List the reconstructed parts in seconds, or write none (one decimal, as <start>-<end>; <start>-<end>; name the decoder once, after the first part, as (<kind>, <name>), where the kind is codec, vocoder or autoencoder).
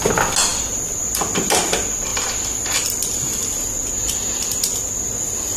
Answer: 0.5-1.6 (vocoder, BigVGAN v2)